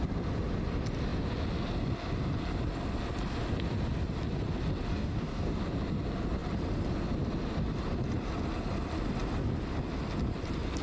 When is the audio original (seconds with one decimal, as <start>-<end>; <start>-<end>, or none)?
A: 0.0-4.9; 5.6-10.8

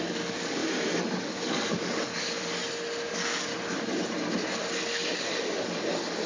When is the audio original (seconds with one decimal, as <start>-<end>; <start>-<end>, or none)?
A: 0.6-1.2; 2.6-3.1; 3.5-6.3